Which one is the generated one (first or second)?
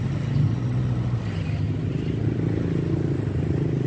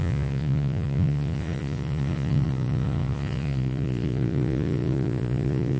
second